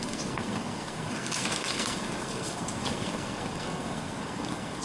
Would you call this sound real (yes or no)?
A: no